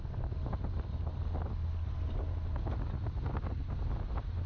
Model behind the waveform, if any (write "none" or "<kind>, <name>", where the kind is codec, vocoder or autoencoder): none